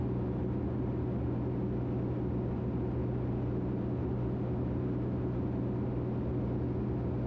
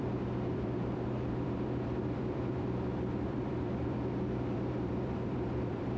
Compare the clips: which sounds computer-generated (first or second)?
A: second